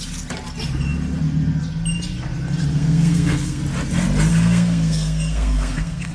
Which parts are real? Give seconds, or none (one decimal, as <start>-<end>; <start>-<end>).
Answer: 0.0-2.7; 3.6-4.3